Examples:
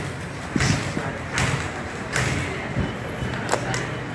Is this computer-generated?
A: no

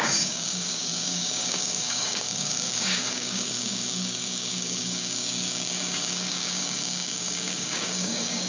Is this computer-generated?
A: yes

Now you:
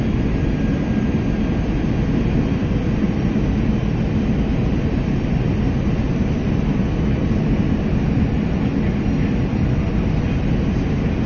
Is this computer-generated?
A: no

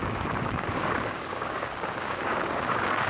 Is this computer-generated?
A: yes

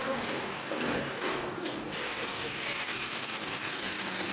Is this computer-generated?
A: yes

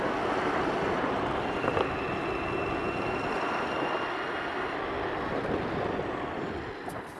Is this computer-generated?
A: no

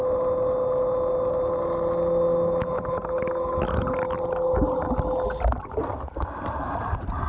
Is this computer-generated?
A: no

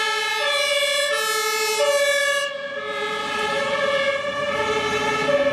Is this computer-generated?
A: no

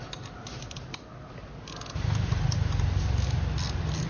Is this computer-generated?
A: no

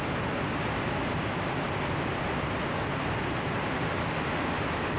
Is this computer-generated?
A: no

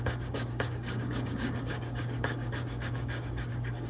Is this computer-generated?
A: yes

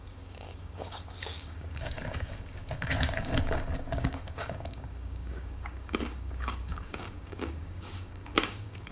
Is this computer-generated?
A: yes